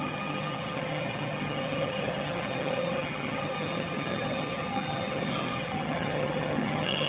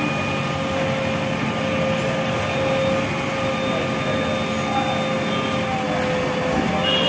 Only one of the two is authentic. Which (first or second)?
second